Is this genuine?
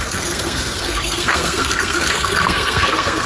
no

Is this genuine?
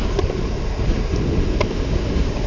yes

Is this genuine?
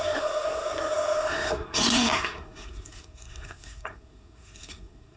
no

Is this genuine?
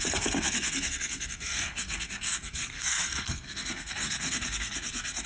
no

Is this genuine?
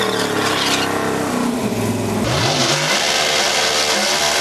yes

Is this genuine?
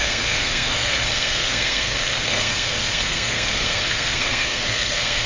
no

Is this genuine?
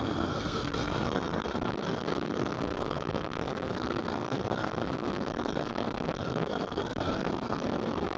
no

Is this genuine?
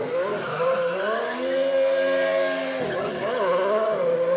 yes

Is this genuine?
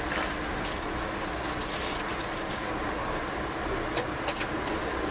yes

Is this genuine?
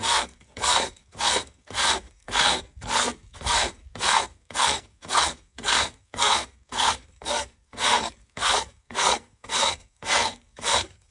no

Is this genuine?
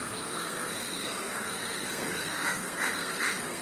no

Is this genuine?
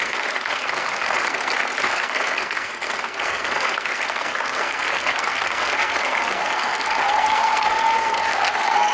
no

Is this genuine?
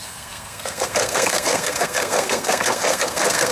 no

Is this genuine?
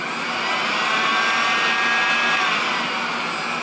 yes